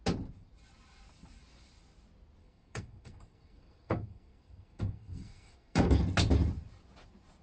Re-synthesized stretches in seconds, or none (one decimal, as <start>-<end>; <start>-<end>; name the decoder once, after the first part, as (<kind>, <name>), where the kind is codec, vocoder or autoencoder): 2.4-6.0 (codec, SNAC)